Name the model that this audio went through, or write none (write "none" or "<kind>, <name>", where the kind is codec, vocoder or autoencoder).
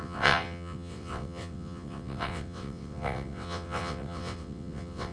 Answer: vocoder, WaveNeXt